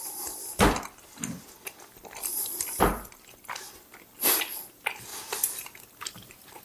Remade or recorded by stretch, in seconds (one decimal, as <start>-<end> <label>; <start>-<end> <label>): 0.0-5.1 recorded; 5.1-6.6 remade